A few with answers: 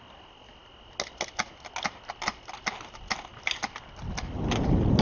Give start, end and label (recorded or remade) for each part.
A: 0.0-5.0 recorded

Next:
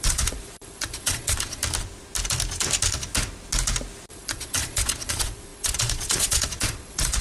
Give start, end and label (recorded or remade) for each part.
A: 0.0-1.6 remade; 1.6-4.1 recorded; 4.1-7.2 remade

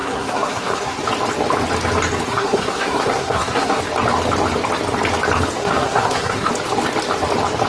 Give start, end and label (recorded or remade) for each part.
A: 0.0-1.0 remade; 1.0-2.3 recorded; 2.3-3.8 remade; 3.8-5.6 recorded; 5.6-6.5 remade; 6.5-7.7 recorded

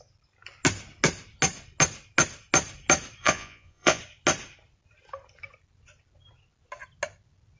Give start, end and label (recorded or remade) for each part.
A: 0.0-3.2 recorded; 3.2-4.0 remade; 4.0-7.6 recorded

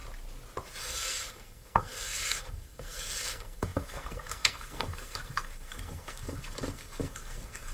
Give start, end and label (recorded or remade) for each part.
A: 0.0-0.8 recorded; 0.8-7.7 remade